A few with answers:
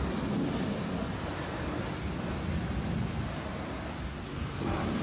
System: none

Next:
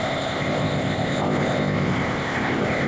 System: codec, ZipCodec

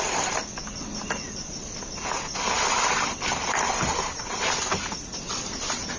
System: none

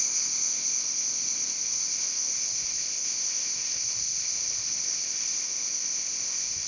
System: codec, ZipCodec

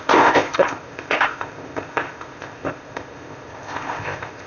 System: codec, ZipCodec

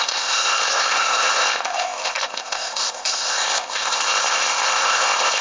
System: codec, ZipCodec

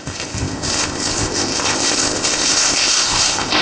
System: codec, ZipCodec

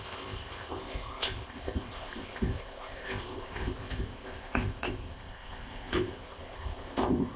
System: codec, ZipCodec